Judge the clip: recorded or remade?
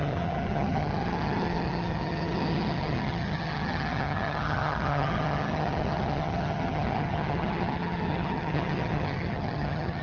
remade